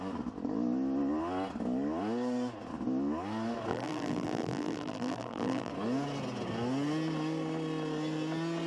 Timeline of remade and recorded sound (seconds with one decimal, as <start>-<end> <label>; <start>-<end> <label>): 0.0-3.7 recorded; 3.7-5.7 remade; 5.7-8.7 recorded